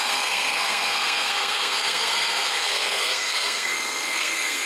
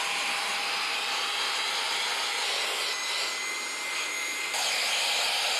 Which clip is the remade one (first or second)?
first